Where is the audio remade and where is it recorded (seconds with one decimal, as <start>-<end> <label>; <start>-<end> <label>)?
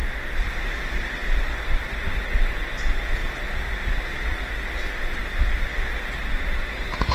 0.0-7.1 recorded